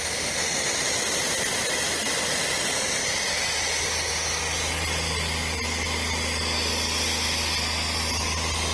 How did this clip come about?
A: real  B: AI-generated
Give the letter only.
A